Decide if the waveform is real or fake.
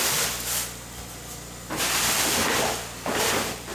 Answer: fake